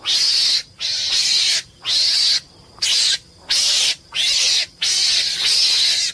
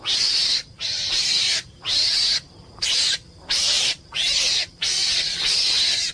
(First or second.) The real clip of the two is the first